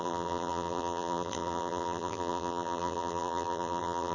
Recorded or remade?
remade